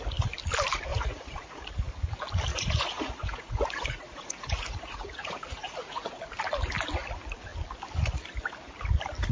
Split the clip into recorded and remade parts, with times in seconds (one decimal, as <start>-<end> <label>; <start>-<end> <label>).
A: 0.0-0.9 recorded; 0.9-1.7 remade; 1.7-2.5 recorded; 2.5-6.2 remade; 6.2-9.3 recorded

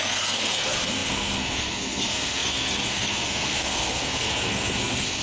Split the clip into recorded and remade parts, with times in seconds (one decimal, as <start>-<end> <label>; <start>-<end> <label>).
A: 0.0-5.2 remade

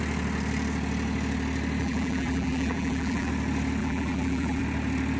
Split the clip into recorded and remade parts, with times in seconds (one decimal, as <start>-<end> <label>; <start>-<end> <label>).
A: 0.0-1.8 recorded; 1.8-3.3 remade; 3.3-3.8 recorded; 3.8-4.6 remade; 4.6-5.2 recorded

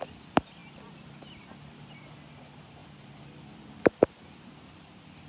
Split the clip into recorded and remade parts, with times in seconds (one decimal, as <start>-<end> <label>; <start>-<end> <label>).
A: 0.0-5.3 recorded